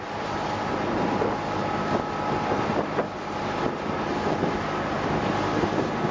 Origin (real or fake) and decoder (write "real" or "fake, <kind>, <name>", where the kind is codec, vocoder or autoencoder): real